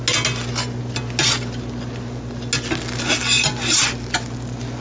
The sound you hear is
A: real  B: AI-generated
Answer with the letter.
A